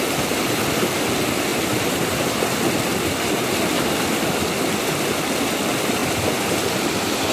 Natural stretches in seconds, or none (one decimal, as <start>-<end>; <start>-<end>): 0.0-7.3